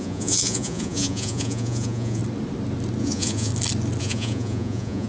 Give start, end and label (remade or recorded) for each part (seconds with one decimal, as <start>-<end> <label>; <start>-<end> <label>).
0.0-2.2 remade; 2.2-3.0 recorded; 3.0-3.5 remade; 3.5-4.0 recorded; 4.0-5.1 remade